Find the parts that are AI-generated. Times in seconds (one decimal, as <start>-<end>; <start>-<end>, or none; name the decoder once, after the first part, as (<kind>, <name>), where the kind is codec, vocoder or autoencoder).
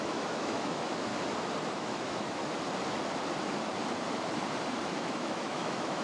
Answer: 0.0-1.1 (autoencoder, DAC-VAE); 1.7-2.4; 4.8-6.0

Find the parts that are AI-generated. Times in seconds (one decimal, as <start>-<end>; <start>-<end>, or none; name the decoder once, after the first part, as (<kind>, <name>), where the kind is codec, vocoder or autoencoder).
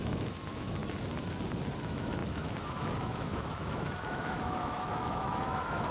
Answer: 0.0-0.8 (autoencoder, DAC-VAE); 1.8-5.9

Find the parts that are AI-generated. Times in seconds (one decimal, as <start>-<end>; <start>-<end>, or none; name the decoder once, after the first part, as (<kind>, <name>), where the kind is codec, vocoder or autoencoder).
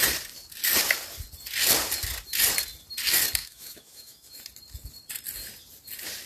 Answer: 3.4-4.4 (autoencoder, DAC-VAE)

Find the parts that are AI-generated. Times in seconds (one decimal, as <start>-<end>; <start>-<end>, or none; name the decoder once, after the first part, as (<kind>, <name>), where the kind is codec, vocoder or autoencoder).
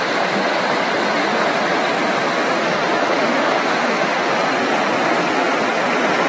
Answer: 2.6-4.3 (autoencoder, DAC-VAE)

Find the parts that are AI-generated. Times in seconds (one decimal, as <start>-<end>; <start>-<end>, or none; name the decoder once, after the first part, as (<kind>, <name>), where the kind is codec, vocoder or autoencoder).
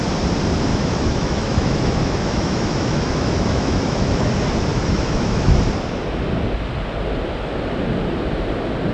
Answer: 0.7-4.3 (autoencoder, DAC-VAE); 4.7-5.6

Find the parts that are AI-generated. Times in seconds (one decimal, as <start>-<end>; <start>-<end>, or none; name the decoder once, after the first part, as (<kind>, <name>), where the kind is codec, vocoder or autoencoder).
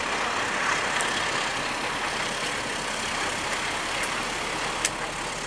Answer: none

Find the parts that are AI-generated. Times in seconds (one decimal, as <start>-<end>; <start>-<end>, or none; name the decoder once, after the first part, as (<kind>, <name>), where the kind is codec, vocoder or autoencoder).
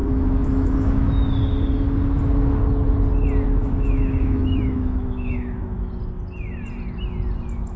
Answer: 0.0-1.1 (autoencoder, DAC-VAE); 3.6-5.9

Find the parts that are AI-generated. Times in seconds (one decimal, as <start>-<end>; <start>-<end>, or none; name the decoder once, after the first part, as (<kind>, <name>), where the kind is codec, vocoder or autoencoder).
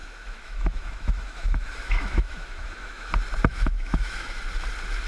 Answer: 0.0-3.1 (autoencoder, DAC-VAE); 3.5-4.4